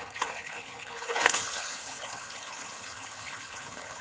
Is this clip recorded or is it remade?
remade